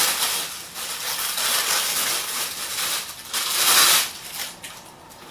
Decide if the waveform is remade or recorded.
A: recorded